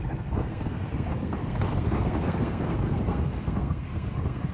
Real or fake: fake